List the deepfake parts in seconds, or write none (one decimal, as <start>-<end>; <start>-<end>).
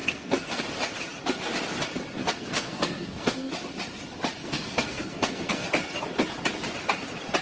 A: 0.0-0.6; 2.2-3.5; 4.4-5.7